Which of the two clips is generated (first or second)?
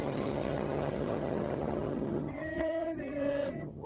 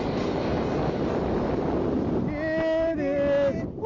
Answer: first